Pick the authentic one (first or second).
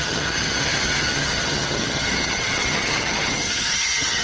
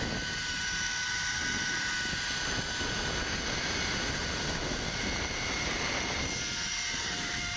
second